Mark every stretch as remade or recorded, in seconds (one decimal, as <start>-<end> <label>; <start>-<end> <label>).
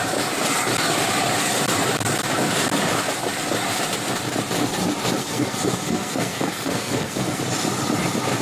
0.0-5.2 recorded; 5.2-7.4 remade; 7.4-8.4 recorded